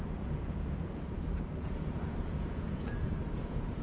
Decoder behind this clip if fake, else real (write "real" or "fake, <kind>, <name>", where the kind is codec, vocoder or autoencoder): fake, vocoder, Vocos